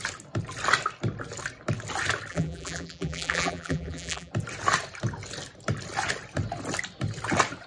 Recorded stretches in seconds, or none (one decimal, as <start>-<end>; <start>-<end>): 0.0-2.3; 4.3-7.7